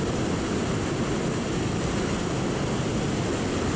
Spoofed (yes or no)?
no